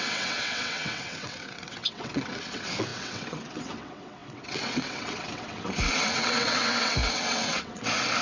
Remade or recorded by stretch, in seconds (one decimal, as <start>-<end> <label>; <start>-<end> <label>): 0.0-8.2 remade